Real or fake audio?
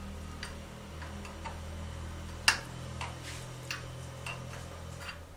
real